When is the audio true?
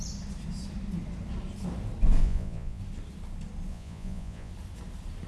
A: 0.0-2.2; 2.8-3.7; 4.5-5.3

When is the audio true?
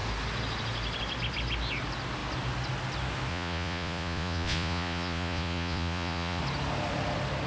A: 0.0-3.3; 6.4-7.5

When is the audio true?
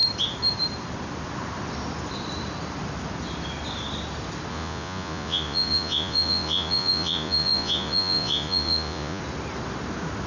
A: 0.0-4.5; 9.2-10.3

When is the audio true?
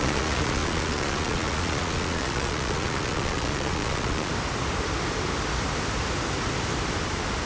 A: 4.3-7.5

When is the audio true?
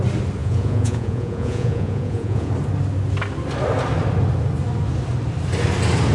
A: 0.0-0.4; 2.5-6.1